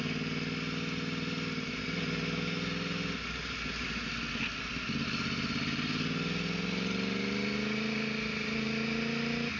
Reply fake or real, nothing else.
real